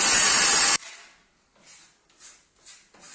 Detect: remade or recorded recorded